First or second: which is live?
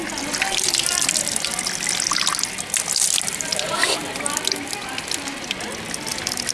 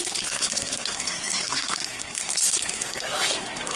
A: first